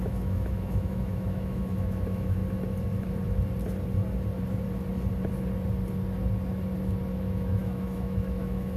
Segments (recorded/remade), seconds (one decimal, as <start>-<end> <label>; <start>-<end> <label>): 0.0-2.4 remade; 2.4-7.1 recorded; 7.1-8.8 remade